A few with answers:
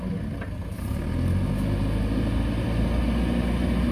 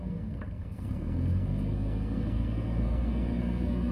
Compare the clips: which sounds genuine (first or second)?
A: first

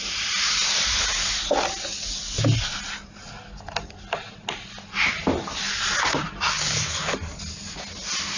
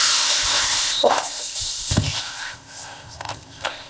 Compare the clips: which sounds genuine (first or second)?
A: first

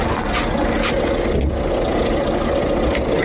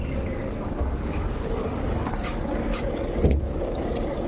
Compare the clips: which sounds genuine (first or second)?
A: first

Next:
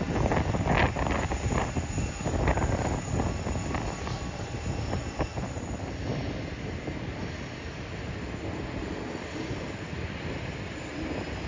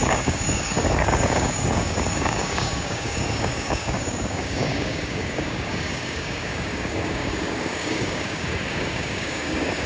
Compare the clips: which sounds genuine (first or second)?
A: first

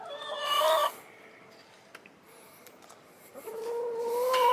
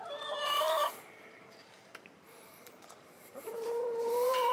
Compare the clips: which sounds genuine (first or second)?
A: first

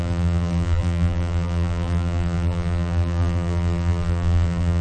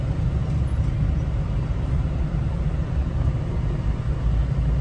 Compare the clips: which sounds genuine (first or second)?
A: second